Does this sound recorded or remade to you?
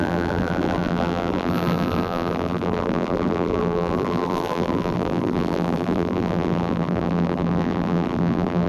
remade